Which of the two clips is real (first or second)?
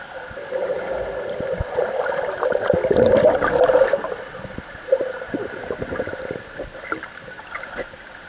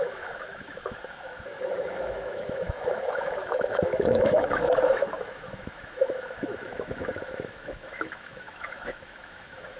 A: first